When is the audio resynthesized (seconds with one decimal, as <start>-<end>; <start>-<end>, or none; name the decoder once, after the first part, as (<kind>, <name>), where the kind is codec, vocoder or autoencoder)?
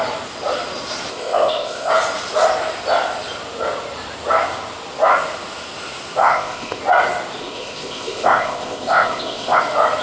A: 1.1-1.9 (codec, ZipCodec); 6.2-6.8; 7.4-9.6